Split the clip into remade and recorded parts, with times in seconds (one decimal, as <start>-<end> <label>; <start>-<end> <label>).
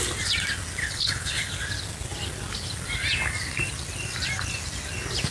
0.0-0.8 recorded; 0.8-1.5 remade; 1.5-5.3 recorded